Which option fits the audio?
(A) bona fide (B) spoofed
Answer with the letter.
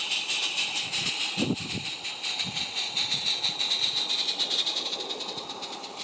A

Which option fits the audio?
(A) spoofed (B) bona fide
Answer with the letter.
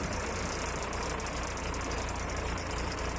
B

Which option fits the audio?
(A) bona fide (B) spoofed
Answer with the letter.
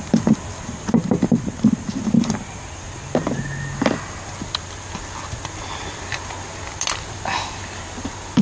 A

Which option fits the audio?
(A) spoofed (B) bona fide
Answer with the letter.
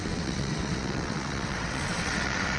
A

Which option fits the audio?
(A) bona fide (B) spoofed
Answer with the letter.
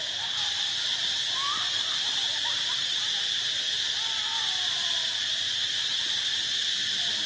A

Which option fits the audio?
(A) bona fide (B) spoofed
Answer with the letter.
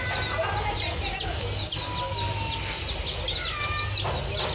A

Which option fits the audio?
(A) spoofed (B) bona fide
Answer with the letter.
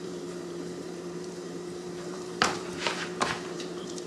A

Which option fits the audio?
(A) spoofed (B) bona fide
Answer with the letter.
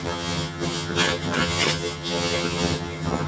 A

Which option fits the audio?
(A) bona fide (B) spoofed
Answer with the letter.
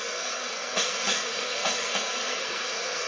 B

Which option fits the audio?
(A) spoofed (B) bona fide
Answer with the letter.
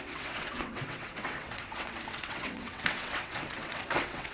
A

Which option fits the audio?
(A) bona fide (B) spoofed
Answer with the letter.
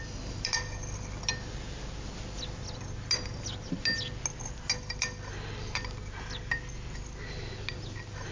A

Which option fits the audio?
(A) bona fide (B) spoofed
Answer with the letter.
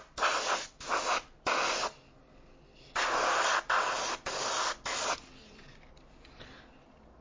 A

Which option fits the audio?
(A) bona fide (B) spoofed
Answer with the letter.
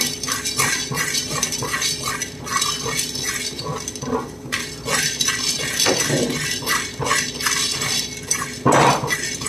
A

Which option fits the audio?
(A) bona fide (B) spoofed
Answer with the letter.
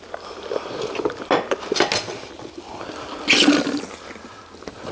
A